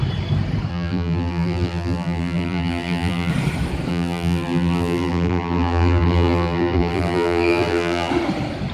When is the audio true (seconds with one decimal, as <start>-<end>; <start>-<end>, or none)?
0.0-0.7; 3.3-3.9; 8.1-8.7